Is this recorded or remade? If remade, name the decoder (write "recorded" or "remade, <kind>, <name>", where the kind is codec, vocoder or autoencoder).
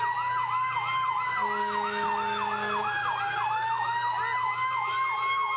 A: recorded